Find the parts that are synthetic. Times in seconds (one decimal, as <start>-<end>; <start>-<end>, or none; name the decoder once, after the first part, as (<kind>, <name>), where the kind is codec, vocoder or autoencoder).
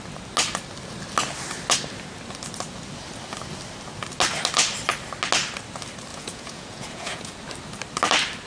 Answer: 6.1-7.3 (vocoder, Vocos)